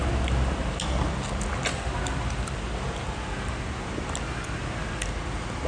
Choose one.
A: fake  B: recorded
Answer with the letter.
B